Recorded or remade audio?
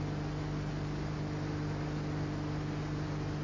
recorded